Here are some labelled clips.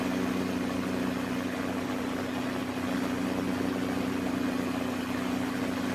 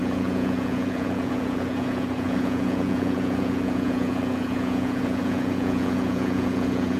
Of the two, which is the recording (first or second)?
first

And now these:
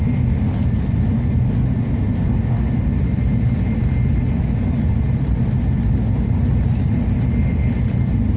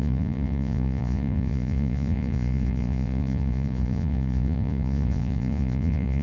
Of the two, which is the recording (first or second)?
first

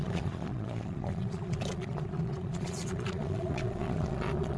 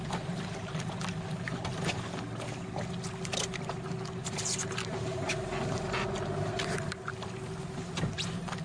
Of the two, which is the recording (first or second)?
second